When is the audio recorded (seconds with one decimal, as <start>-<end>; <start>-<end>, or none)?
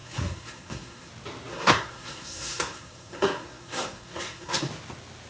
1.1-1.5; 4.7-5.3